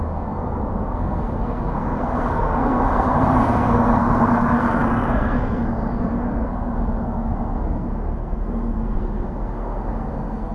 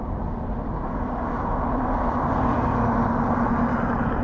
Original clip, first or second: second